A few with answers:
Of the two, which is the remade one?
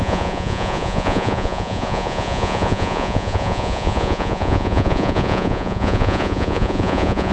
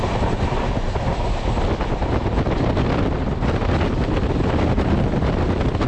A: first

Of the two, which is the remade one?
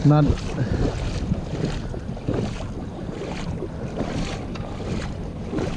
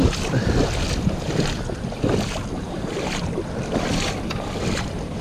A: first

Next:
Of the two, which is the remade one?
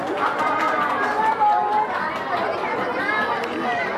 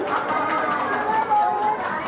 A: second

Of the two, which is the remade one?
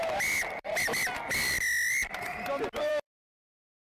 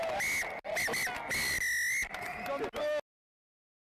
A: first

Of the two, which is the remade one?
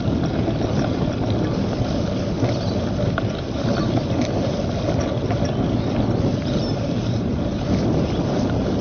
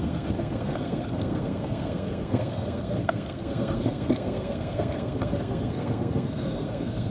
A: second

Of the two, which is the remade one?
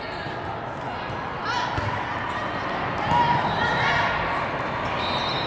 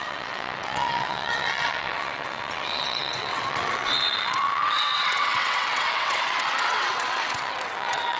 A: second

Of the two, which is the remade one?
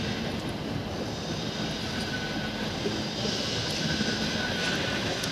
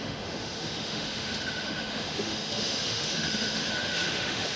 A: second